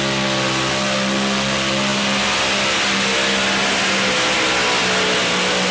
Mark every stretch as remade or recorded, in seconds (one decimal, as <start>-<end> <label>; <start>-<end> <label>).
0.0-5.7 recorded